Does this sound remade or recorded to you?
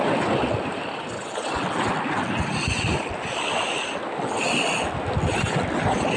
recorded